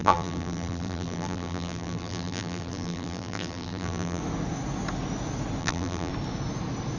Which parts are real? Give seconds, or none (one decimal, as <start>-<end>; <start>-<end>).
4.2-5.6; 6.1-7.0